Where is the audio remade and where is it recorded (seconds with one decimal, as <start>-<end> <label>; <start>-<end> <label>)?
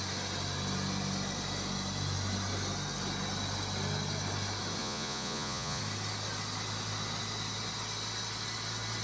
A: 0.0-4.8 recorded; 4.8-5.8 remade; 5.8-9.0 recorded